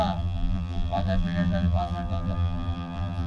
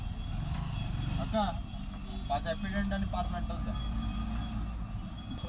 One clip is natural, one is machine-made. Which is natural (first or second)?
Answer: second